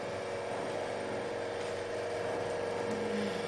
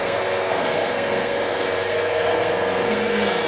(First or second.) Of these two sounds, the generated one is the second